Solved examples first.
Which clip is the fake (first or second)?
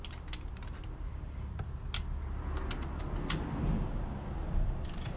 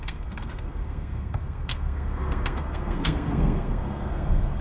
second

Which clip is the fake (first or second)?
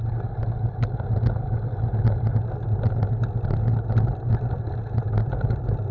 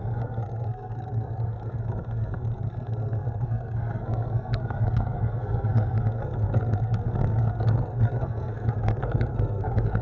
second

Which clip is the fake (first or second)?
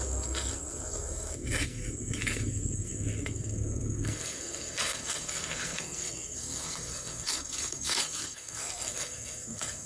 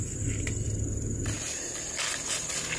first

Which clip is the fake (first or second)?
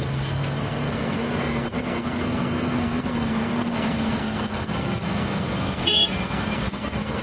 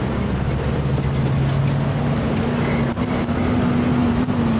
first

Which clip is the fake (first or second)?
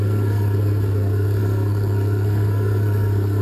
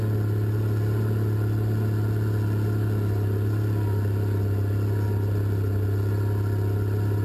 first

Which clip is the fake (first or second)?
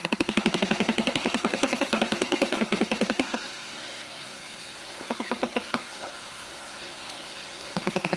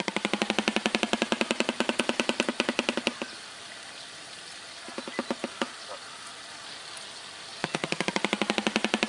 first